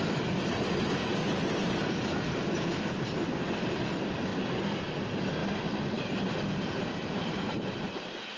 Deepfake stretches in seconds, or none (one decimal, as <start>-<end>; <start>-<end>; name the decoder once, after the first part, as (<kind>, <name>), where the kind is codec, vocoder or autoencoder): 4.3-4.9 (vocoder, BigVGAN v2); 5.4-7.9